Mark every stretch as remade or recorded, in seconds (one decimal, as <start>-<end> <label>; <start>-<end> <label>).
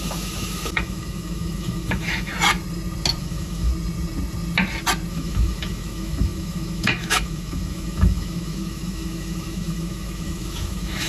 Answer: 0.0-2.3 remade; 2.3-3.2 recorded; 3.2-3.7 remade; 3.7-5.1 recorded; 5.1-11.1 remade